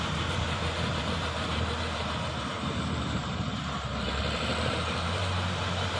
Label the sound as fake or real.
fake